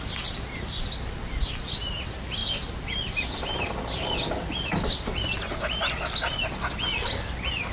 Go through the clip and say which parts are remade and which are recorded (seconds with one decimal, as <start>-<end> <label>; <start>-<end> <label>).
0.0-2.4 recorded; 2.4-4.3 remade; 4.3-7.7 recorded